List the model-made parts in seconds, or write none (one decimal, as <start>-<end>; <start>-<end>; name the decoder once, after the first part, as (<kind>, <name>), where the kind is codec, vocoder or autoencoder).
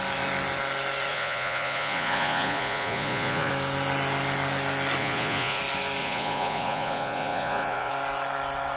1.1-3.5 (vocoder, Vocos); 5.0-5.6; 6.0-7.9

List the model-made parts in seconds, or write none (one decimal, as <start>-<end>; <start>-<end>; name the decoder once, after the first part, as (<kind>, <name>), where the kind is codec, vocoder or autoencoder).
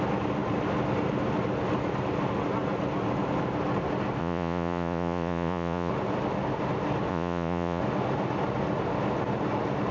4.2-5.9 (vocoder, Vocos); 7.1-7.8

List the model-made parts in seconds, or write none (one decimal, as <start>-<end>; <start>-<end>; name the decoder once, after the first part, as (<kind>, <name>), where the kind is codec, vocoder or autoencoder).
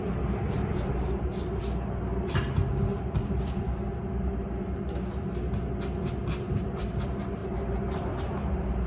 2.9-3.6 (vocoder, BigVGAN v2); 7.4-8.9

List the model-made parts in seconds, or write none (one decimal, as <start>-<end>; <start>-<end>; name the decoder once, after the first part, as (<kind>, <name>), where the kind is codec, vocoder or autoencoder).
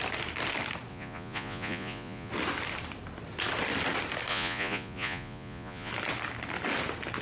0.9-2.3 (vocoder, Vocos); 4.3-5.9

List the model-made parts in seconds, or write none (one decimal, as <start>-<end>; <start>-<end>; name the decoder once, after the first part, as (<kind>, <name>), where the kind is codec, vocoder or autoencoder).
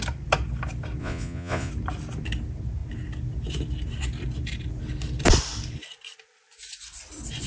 1.0-1.7 (vocoder, Vocos)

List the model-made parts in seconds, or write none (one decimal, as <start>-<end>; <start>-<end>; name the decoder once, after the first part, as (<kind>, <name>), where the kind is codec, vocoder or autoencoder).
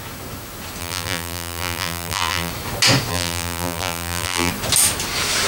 0.8-2.5 (vocoder, BigVGAN v2); 3.1-4.5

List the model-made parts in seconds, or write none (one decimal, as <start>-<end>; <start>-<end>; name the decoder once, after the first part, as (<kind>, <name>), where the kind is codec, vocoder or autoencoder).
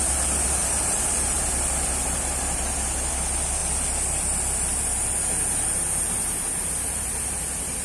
0.6-1.4 (vocoder, BigVGAN v2)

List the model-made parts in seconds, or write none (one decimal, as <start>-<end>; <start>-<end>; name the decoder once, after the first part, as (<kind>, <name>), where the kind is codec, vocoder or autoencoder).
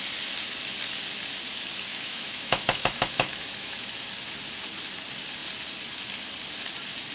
1.9-3.9 (autoencoder, DAC-VAE)